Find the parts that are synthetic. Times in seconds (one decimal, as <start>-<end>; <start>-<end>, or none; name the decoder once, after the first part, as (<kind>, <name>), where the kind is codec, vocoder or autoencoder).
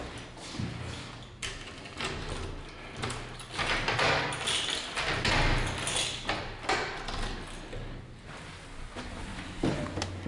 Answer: none